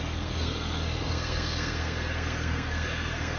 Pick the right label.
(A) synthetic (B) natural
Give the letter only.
A